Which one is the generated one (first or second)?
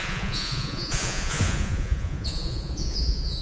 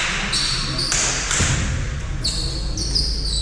first